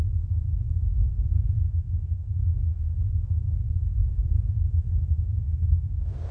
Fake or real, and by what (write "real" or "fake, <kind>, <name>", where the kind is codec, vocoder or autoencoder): fake, codec, SNAC